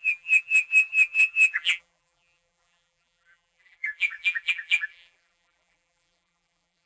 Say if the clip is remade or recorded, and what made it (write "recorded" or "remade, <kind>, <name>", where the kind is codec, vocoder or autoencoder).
remade, vocoder, BigVGAN v2